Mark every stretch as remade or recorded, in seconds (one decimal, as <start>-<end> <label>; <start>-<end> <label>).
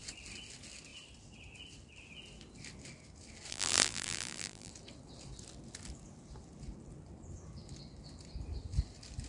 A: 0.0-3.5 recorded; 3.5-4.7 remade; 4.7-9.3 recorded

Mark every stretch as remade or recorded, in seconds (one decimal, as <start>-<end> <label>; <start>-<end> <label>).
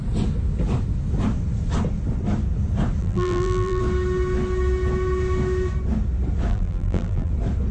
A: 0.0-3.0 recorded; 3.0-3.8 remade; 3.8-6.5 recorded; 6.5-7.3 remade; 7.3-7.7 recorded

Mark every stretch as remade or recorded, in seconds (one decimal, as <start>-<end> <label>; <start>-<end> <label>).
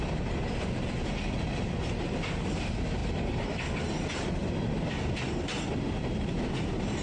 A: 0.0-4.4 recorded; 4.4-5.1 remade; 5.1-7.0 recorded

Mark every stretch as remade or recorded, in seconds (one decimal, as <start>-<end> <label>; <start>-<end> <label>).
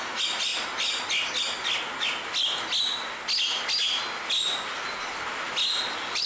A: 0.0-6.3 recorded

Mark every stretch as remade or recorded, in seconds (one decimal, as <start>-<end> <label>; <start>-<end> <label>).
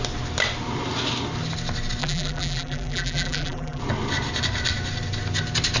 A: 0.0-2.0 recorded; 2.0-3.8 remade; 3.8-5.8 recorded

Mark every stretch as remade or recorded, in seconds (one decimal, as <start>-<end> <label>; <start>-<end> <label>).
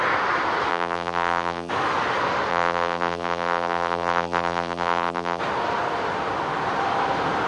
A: 0.0-0.7 recorded; 0.7-1.7 remade; 1.7-2.5 recorded; 2.5-5.4 remade; 5.4-7.5 recorded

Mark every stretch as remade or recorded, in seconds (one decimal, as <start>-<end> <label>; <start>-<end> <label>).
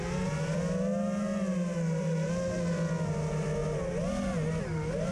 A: 0.0-5.1 recorded